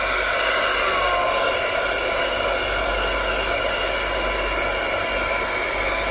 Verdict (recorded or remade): recorded